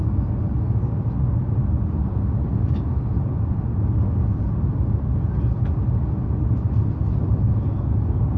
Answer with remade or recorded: recorded